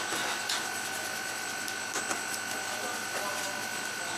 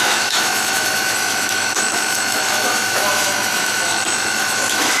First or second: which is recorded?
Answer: first